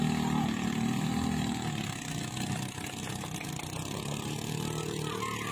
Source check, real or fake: real